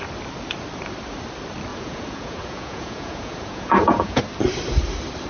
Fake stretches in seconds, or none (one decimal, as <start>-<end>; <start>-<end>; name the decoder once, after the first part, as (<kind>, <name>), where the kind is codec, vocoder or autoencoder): 1.7-4.2 (vocoder, Vocos)